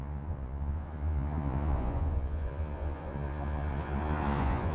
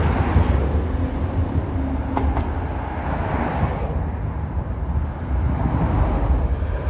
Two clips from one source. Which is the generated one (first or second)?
first